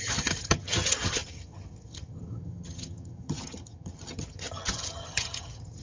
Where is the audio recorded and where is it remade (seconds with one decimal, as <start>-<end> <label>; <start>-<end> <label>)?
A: 0.0-5.8 remade